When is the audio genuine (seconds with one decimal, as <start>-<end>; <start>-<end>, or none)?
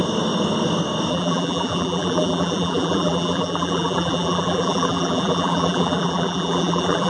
0.0-1.1